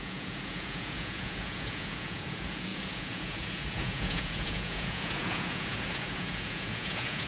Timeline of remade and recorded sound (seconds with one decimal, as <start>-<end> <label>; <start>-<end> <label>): 0.0-7.3 remade